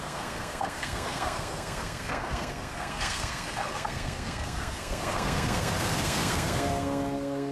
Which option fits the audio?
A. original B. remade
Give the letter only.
B